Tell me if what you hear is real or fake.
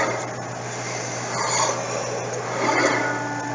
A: real